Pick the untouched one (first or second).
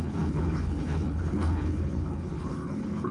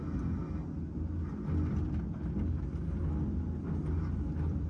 second